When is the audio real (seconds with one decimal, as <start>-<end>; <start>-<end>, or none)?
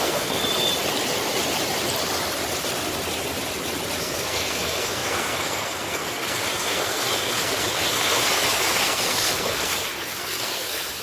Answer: 0.4-4.0